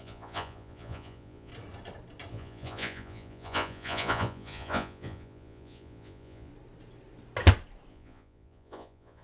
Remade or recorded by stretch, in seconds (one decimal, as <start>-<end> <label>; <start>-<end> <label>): 0.0-1.5 remade; 1.5-2.3 recorded; 2.3-6.5 remade; 6.5-7.9 recorded; 7.9-9.2 remade